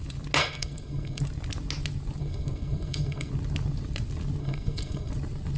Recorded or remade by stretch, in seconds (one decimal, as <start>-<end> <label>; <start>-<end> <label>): 0.0-0.4 recorded; 0.4-1.2 remade; 1.2-2.2 recorded; 2.2-3.3 remade; 3.3-4.4 recorded; 4.4-5.1 remade; 5.1-5.6 recorded